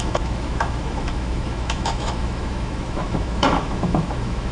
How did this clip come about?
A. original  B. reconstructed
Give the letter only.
B